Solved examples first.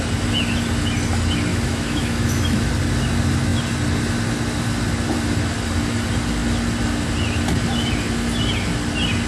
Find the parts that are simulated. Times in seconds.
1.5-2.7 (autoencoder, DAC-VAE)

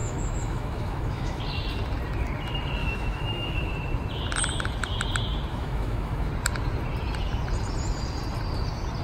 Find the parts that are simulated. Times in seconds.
0.0-1.4 (autoencoder, DAC-VAE); 2.8-3.7; 5.5-6.3

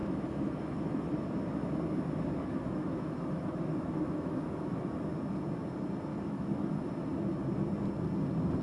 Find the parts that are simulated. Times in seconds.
0.0-1.1 (autoencoder, DAC-VAE); 2.4-5.1; 6.1-6.7

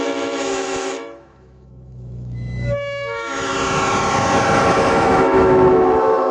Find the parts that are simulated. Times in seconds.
0.0-3.5 (autoencoder, DAC-VAE); 4.8-6.3

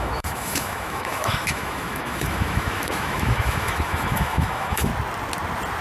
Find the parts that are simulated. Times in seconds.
0.0-4.9 (autoencoder, DAC-VAE)

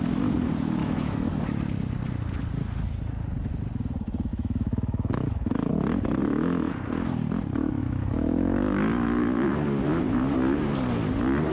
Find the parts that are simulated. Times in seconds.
0.8-1.4 (autoencoder, DAC-VAE); 4.3-5.7; 6.2-6.7; 7.8-9.5

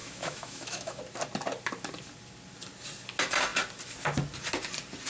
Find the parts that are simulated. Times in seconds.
0.0-1.0 (autoencoder, DAC-VAE)

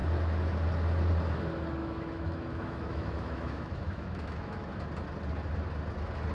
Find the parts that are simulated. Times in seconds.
1.8-4.7 (autoencoder, DAC-VAE)